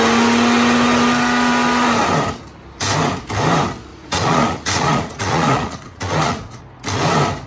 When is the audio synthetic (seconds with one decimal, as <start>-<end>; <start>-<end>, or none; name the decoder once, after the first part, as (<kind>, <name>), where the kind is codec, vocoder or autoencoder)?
3.9-6.6 (vocoder, Vocos)